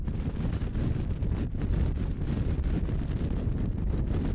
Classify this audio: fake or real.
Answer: real